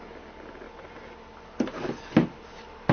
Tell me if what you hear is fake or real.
real